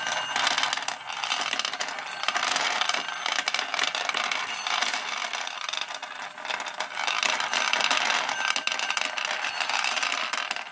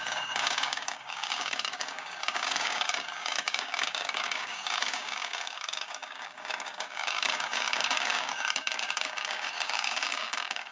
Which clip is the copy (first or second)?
second